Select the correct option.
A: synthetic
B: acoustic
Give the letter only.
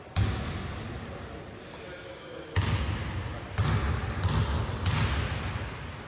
B